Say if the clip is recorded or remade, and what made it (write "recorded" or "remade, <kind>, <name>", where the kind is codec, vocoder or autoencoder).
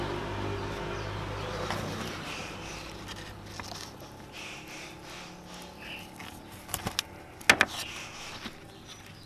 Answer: recorded